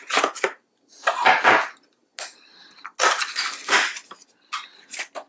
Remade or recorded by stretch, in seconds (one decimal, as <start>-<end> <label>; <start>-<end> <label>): 0.0-5.3 recorded